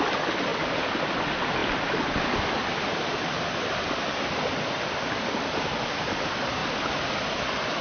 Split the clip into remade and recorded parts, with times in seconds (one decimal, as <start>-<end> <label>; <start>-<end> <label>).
0.0-0.5 remade; 0.5-1.1 recorded; 1.1-6.6 remade; 6.6-7.8 recorded